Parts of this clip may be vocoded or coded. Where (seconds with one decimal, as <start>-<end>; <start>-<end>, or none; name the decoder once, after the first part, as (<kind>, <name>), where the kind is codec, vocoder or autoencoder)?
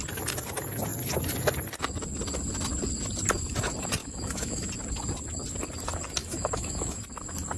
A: 4.0-4.7 (autoencoder, DAC-VAE); 6.2-7.0